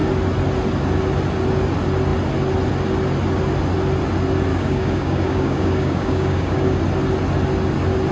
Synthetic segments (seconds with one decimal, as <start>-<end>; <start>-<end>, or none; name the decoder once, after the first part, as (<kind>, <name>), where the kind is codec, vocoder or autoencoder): 4.5-6.8 (codec, DAC)

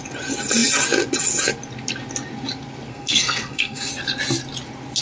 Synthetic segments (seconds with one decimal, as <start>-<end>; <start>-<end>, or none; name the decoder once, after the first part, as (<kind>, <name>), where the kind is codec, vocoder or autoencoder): 2.9-3.9 (codec, SNAC)

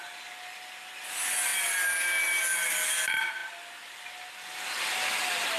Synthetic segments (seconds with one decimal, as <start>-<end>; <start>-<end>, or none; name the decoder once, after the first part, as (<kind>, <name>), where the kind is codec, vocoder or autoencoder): none

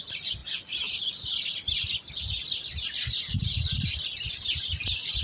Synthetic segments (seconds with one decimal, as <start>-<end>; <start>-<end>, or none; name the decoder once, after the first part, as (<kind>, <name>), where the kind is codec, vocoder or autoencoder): none

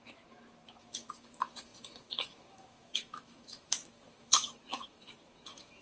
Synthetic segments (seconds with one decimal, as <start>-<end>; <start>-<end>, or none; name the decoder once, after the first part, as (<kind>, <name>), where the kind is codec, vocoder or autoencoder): 0.0-5.8 (autoencoder, DAC-VAE)

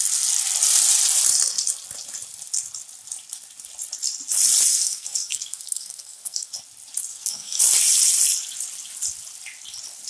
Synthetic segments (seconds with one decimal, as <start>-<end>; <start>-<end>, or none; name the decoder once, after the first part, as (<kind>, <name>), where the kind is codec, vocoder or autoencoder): 4.7-6.5 (codec, SNAC); 7.1-7.6